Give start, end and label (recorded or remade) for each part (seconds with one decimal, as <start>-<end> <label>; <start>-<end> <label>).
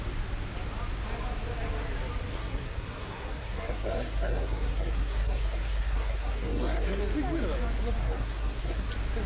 0.0-2.3 recorded; 2.3-7.0 remade; 7.0-8.0 recorded; 8.0-8.9 remade; 8.9-9.3 recorded